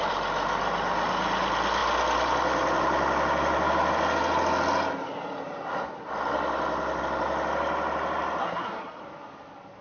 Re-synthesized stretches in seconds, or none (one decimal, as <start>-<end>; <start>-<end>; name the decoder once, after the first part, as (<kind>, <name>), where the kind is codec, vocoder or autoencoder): 8.4-9.0 (codec, SNAC)